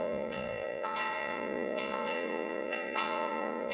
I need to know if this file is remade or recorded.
remade